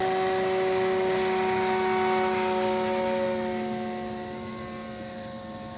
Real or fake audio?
real